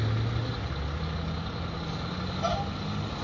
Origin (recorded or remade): recorded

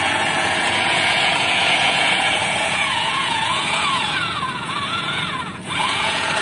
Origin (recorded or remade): remade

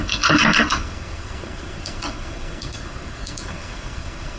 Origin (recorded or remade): remade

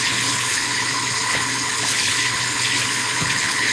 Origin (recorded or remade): remade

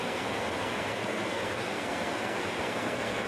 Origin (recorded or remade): remade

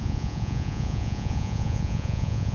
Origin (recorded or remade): remade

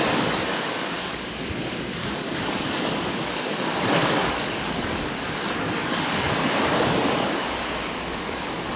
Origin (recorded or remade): remade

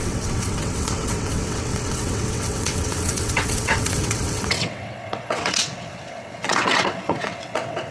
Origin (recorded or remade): remade